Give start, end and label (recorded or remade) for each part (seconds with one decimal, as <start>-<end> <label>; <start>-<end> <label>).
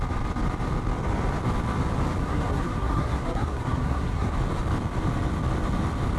0.0-2.2 recorded; 2.2-4.3 remade; 4.3-6.2 recorded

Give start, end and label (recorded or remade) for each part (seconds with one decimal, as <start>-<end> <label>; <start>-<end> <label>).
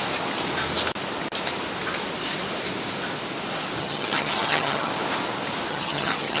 0.0-3.8 recorded; 3.8-4.9 remade; 4.9-5.7 recorded; 5.7-6.4 remade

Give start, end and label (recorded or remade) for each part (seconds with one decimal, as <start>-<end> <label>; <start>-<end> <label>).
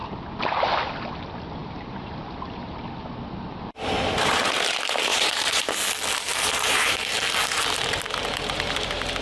0.0-0.7 remade; 0.7-1.6 recorded; 1.6-2.8 remade; 2.8-5.1 recorded; 5.1-5.7 remade; 5.7-6.3 recorded; 6.3-7.1 remade; 7.1-9.2 recorded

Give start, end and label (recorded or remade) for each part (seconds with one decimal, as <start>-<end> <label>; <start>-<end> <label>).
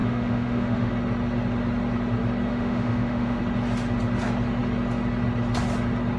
0.0-0.9 remade; 0.9-2.5 recorded; 2.5-3.4 remade; 3.4-6.2 recorded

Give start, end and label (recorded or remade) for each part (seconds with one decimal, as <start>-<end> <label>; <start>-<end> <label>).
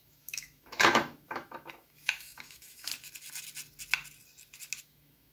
0.0-2.9 remade; 2.9-4.8 recorded; 4.8-5.3 remade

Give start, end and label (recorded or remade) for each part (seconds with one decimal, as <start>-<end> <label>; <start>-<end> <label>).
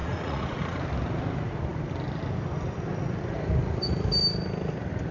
0.0-0.8 remade; 0.8-5.1 recorded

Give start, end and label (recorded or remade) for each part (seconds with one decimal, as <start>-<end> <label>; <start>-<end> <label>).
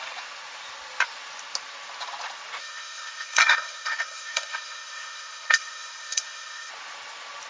0.0-2.6 recorded; 2.6-6.7 remade; 6.7-7.5 recorded